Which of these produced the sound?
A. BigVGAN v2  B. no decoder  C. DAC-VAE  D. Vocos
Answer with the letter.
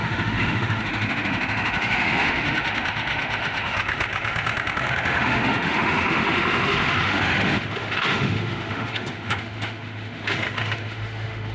C